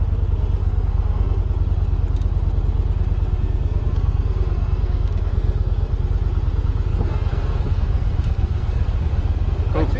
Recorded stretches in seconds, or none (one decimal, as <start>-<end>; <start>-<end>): 0.0-0.6; 1.4-3.3; 5.9-6.9; 9.6-10.0